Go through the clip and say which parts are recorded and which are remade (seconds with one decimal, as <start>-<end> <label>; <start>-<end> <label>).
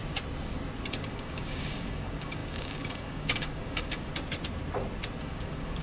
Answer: 0.0-0.9 recorded; 0.9-4.1 remade; 4.1-5.2 recorded; 5.2-5.8 remade